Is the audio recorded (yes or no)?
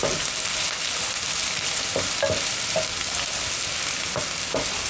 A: yes